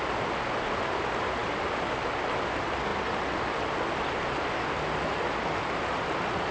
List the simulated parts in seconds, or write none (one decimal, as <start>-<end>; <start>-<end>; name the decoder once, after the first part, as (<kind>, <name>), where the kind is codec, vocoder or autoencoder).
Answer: none